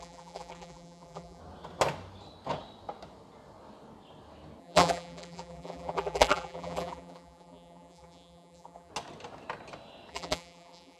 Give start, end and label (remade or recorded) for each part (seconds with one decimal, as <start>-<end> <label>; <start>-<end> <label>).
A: 0.0-1.4 remade; 1.4-4.6 recorded; 4.6-8.9 remade; 8.9-10.1 recorded; 10.1-11.0 remade